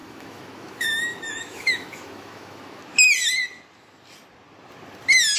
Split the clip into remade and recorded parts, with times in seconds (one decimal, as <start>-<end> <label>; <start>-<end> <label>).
0.0-2.8 remade; 2.8-5.4 recorded